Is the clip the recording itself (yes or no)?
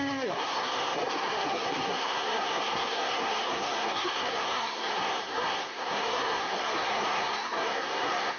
no